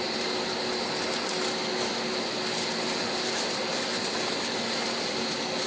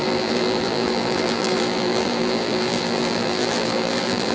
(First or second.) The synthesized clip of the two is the second